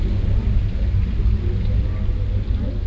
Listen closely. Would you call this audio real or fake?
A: real